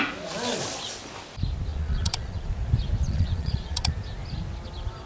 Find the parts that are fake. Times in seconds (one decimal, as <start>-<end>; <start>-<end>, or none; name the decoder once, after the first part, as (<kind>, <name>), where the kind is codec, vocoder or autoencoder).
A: 1.7-2.5 (vocoder, Vocos); 3.0-3.9